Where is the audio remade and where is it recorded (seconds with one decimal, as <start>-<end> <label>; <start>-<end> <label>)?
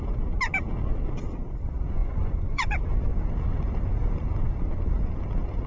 0.0-2.0 recorded; 2.0-2.7 remade; 2.7-5.7 recorded